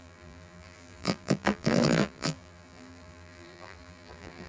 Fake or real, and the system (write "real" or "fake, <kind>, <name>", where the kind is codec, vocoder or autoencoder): fake, vocoder, BigVGAN v2